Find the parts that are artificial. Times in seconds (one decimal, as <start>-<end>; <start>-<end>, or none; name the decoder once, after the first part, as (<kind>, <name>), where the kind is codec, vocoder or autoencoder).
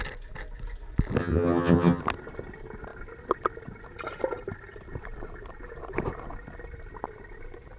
1.2-2.0 (vocoder, HiFi-GAN)